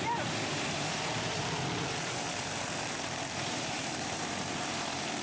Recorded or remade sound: remade